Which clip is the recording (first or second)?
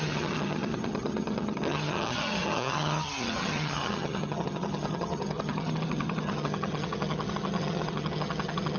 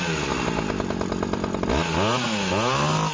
second